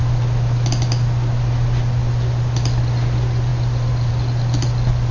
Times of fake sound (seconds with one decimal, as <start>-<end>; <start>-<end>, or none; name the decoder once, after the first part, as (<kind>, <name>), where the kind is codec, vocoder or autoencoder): none